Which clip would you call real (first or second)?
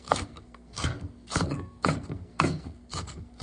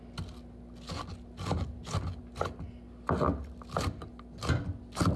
second